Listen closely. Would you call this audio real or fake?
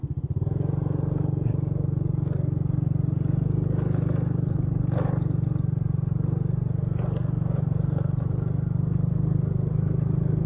real